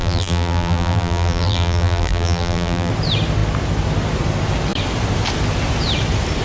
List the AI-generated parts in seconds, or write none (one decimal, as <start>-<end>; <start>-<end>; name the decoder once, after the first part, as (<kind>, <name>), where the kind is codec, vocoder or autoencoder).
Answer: 0.0-2.9 (vocoder, BigVGAN v2)